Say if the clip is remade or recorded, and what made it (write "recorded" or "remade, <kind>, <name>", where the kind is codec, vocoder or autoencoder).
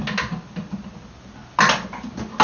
recorded